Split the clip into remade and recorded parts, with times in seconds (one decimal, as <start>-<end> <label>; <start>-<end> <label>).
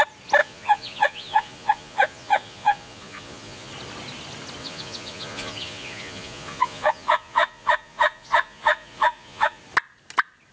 0.0-0.4 recorded; 0.4-3.7 remade; 3.7-4.6 recorded; 4.6-9.6 remade; 9.6-10.5 recorded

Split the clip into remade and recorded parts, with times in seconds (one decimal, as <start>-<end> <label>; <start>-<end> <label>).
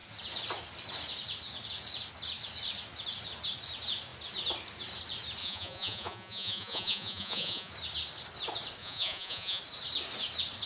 0.0-5.4 recorded; 5.4-7.7 remade; 7.7-8.8 recorded; 8.8-9.6 remade; 9.6-10.7 recorded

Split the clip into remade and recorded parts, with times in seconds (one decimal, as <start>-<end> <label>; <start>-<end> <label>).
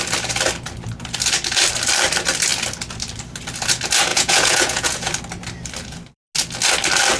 0.0-4.1 recorded; 4.1-5.1 remade; 5.1-7.2 recorded